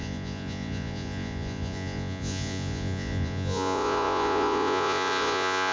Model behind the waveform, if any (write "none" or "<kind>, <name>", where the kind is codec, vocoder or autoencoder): vocoder, Vocos